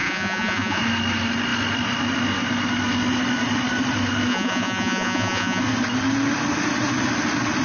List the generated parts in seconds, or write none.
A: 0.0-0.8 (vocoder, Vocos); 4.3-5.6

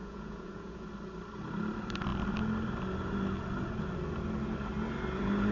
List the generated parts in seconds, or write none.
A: 0.0-0.9 (vocoder, Vocos)

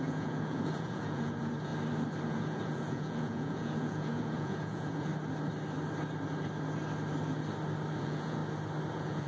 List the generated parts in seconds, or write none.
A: 0.0-1.7 (vocoder, Vocos); 2.3-5.1; 8.0-8.4; 8.9-9.3

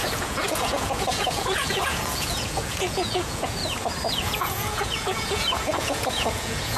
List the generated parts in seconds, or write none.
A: 0.0-3.6 (vocoder, Vocos); 4.1-6.8